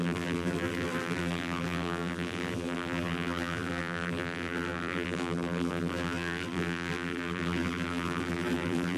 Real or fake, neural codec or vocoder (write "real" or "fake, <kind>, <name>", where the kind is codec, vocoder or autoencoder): fake, vocoder, BigVGAN v2